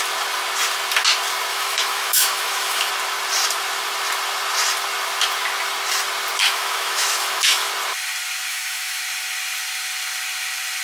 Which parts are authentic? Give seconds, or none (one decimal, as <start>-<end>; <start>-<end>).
0.0-1.5; 2.9-6.4; 7.7-8.5; 9.0-10.8